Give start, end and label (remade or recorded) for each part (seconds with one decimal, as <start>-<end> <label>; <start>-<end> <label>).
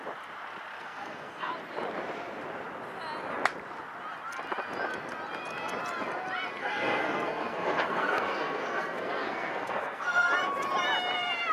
0.0-0.8 recorded; 0.8-1.5 remade; 1.5-6.6 recorded; 6.6-10.3 remade; 10.3-11.5 recorded